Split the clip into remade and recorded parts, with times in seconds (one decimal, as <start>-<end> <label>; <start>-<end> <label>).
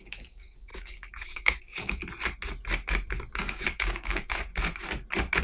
0.0-2.0 remade; 2.0-3.4 recorded; 3.4-4.5 remade; 4.5-5.4 recorded